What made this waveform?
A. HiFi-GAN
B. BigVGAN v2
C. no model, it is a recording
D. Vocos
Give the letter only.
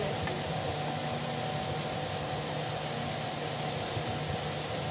C